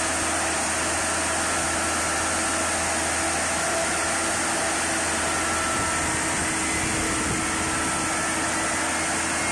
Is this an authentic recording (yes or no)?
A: yes